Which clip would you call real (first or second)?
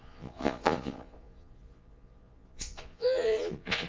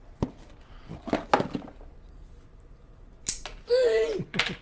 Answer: second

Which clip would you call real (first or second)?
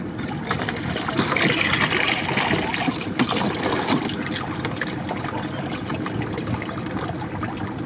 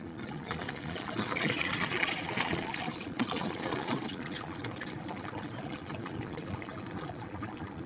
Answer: first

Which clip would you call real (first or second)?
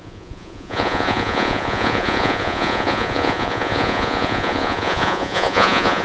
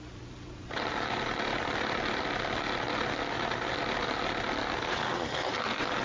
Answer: second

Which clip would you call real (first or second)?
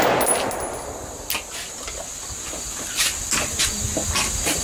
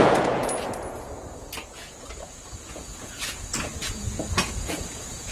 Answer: first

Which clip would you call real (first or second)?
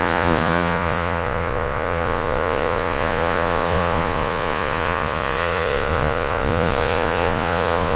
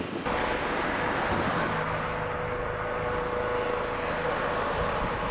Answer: second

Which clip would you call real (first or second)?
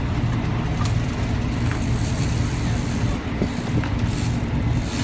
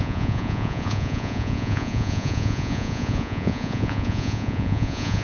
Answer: first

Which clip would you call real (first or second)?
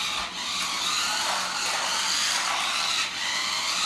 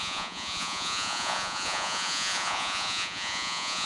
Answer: first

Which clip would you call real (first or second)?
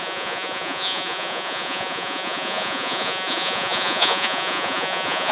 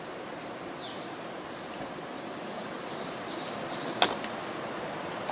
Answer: second